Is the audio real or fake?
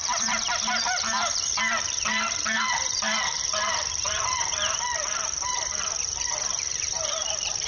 fake